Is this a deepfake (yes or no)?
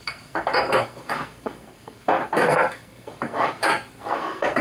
yes